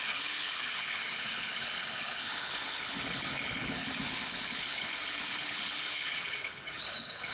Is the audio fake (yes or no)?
yes